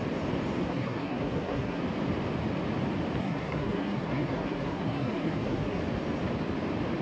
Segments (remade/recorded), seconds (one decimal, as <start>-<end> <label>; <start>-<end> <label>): 0.0-0.6 recorded; 0.6-1.8 remade; 1.8-3.2 recorded; 3.2-5.8 remade; 5.8-7.0 recorded

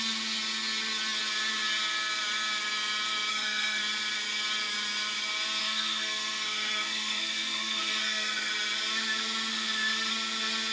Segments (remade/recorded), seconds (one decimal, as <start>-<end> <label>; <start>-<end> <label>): 0.0-3.3 recorded; 3.3-3.8 remade; 3.8-5.6 recorded; 5.6-8.5 remade; 8.5-9.5 recorded; 9.5-10.1 remade; 10.1-10.7 recorded

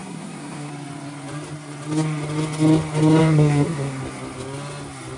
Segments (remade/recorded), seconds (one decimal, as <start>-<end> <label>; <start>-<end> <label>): 0.0-0.7 remade; 0.7-3.2 recorded; 3.2-4.0 remade; 4.0-5.2 recorded

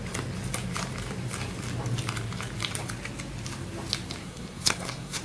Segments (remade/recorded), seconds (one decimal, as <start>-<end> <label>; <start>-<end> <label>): 0.0-4.2 recorded; 4.2-5.2 remade

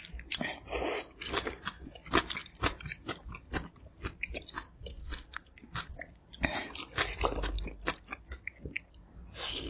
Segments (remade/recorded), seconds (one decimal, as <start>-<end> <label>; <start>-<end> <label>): 0.0-5.0 recorded; 5.0-5.9 remade; 5.9-9.7 recorded

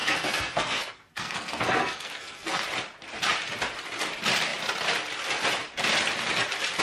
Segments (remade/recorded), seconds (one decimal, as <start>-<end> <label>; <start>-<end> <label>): 0.0-2.6 remade; 2.6-6.8 recorded

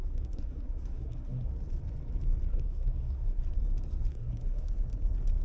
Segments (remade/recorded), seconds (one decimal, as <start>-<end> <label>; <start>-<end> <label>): 0.0-1.5 remade; 1.5-2.5 recorded; 2.5-3.4 remade; 3.4-4.1 recorded; 4.1-4.7 remade; 4.7-5.4 recorded